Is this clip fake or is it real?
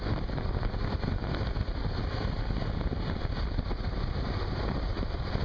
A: real